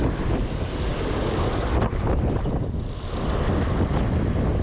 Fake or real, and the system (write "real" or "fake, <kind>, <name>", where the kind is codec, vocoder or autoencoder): real